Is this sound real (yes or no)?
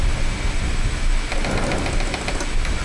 yes